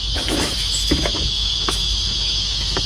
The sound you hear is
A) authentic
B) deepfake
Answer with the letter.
B